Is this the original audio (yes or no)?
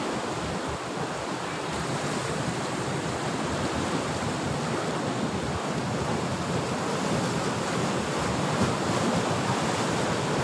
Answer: yes